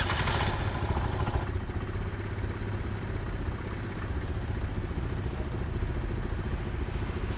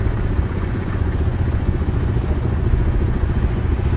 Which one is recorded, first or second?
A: first